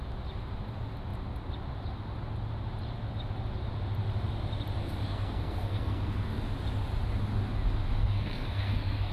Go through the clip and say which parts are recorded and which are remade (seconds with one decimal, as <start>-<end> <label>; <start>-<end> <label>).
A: 0.0-5.1 recorded; 5.1-6.4 remade; 6.4-8.0 recorded; 8.0-9.1 remade